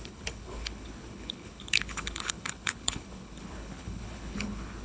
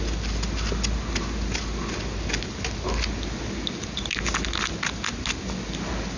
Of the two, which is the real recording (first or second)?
second